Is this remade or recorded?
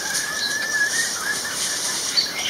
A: remade